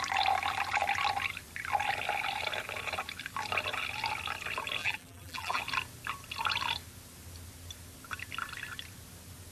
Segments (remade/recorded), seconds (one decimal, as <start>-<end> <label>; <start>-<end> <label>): 0.0-4.8 recorded; 4.8-5.6 remade; 5.6-9.5 recorded